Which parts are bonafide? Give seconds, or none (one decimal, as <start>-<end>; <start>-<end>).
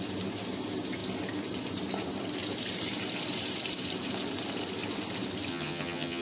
0.0-5.5